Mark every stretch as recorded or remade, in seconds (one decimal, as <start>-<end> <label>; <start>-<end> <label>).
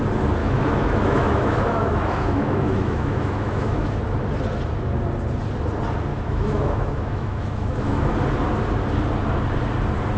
0.0-0.4 recorded; 0.4-4.0 remade; 4.0-6.1 recorded; 6.1-8.1 remade; 8.1-10.2 recorded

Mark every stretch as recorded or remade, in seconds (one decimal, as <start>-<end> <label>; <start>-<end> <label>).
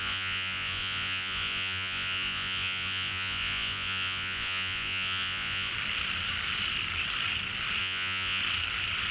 0.0-5.7 remade; 5.7-7.8 recorded; 7.8-8.4 remade; 8.4-9.1 recorded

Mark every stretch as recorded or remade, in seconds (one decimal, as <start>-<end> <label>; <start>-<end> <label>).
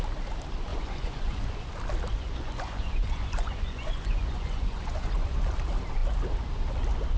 0.0-0.7 recorded; 0.7-1.7 remade; 1.7-2.1 recorded; 2.1-5.5 remade; 5.5-7.2 recorded